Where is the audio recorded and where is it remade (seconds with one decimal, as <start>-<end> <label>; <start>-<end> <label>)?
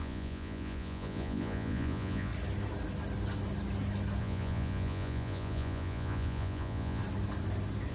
0.0-2.3 remade; 2.3-4.2 recorded; 4.2-7.0 remade; 7.0-7.9 recorded